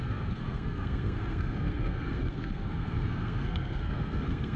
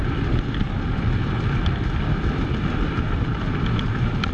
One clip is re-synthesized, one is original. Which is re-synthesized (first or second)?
first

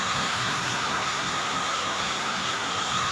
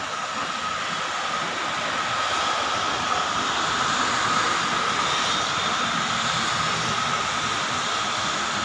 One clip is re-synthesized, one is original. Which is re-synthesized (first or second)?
first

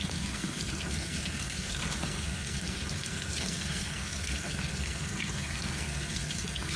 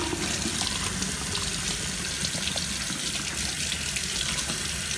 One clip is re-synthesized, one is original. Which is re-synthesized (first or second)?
first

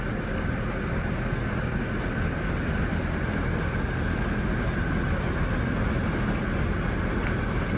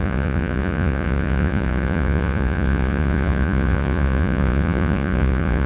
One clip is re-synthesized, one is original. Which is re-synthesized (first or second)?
second